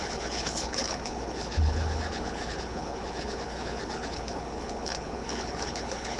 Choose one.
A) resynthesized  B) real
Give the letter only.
A